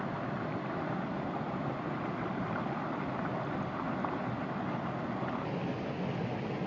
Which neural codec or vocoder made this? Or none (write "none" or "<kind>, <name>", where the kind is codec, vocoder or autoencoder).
none